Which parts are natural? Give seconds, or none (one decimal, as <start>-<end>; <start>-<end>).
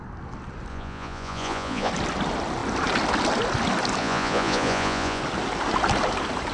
0.0-0.7; 1.9-4.0; 5.2-6.5